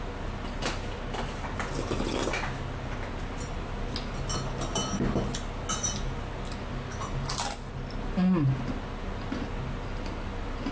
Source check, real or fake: real